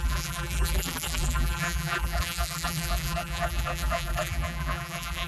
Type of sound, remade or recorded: remade